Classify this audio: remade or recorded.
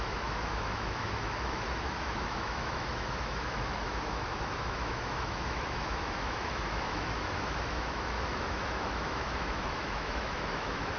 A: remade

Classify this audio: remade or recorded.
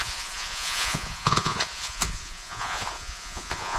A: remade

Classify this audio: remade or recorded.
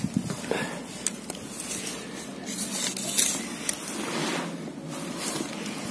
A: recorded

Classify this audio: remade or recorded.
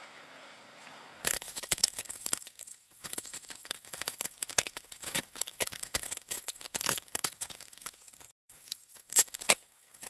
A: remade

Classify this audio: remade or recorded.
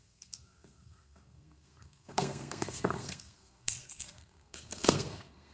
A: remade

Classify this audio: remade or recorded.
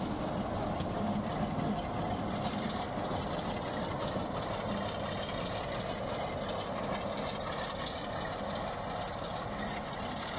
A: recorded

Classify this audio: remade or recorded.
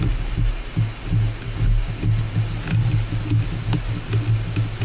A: recorded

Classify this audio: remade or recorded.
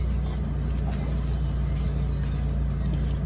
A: recorded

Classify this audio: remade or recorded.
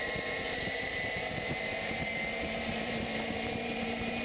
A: remade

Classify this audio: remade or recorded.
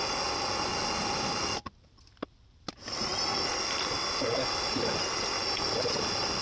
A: recorded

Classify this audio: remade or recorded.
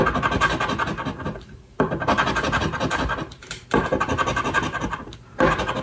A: recorded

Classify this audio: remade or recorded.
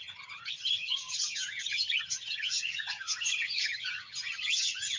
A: remade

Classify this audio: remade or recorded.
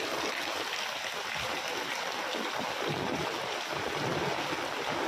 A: recorded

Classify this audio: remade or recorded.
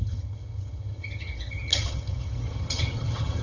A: remade